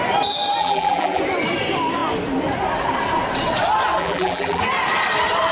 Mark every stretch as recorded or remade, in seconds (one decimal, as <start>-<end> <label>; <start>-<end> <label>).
0.0-0.6 recorded; 0.6-1.2 remade; 1.2-4.0 recorded; 4.0-4.6 remade; 4.6-5.5 recorded